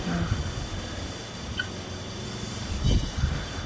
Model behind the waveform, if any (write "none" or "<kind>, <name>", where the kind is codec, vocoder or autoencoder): none